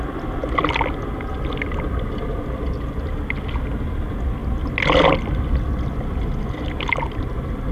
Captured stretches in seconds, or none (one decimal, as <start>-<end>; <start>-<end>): 0.0-7.7